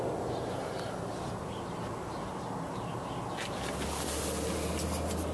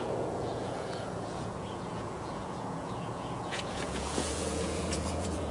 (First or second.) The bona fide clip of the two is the first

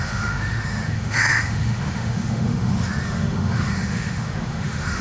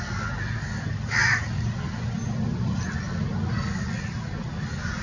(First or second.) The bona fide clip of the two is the second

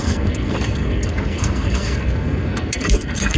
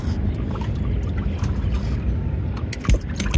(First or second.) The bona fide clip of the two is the second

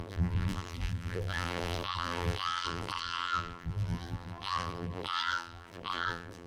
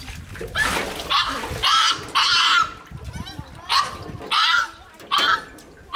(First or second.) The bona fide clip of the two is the second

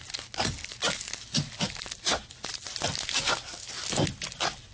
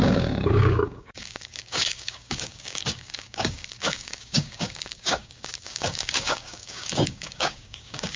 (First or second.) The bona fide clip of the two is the first